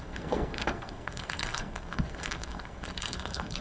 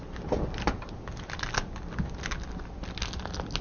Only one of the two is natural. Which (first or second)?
second